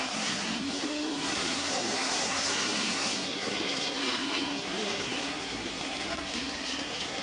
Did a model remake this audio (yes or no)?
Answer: yes